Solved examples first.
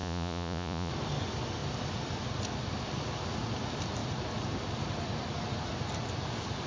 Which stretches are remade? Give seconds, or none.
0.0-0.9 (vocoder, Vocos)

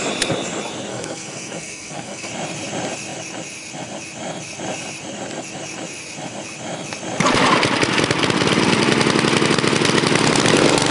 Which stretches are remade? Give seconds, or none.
0.9-2.3 (codec, SNAC)

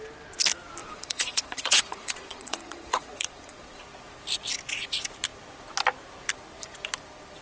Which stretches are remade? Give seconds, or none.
0.8-3.8 (vocoder, Vocos)

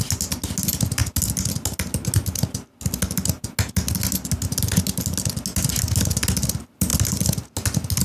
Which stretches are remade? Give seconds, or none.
none

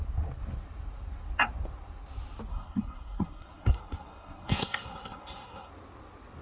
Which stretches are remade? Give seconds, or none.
2.5-5.7 (codec, SNAC)

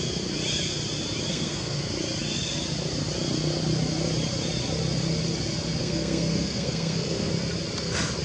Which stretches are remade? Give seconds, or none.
1.3-1.8 (codec, SNAC); 5.8-7.3

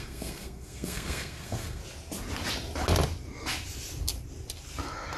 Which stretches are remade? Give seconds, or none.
0.0-1.8 (codec, SNAC)